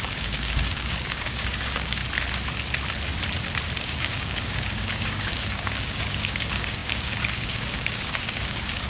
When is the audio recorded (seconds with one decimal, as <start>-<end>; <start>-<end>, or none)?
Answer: 2.0-3.8